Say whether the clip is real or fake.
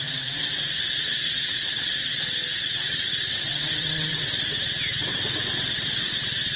fake